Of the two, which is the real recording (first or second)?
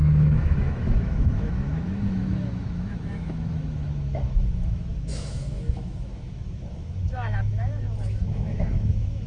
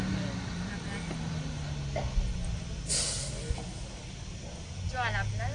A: second